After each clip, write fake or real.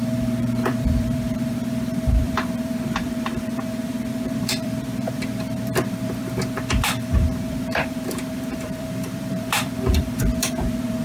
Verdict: fake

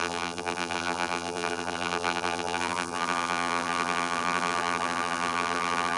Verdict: fake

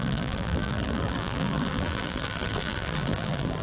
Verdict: fake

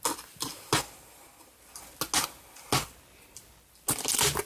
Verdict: real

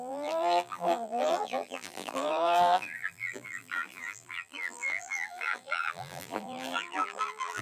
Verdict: fake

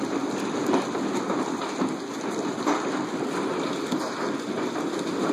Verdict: real